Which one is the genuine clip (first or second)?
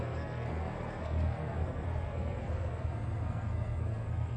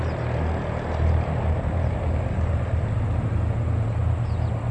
second